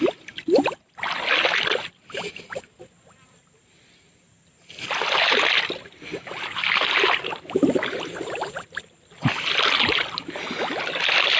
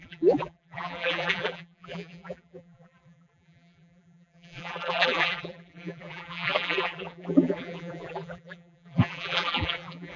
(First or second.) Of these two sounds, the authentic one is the first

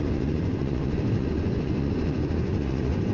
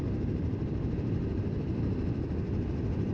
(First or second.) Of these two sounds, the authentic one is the second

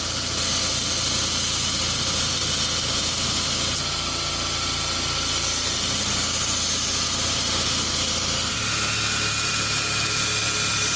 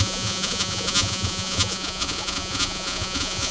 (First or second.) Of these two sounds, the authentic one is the first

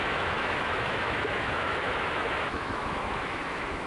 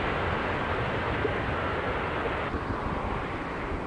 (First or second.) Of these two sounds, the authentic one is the second